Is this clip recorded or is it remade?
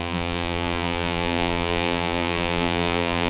remade